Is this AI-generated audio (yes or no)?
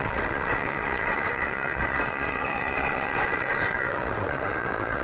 yes